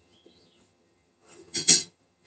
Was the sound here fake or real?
fake